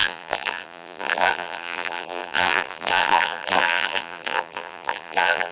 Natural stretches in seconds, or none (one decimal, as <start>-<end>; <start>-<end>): none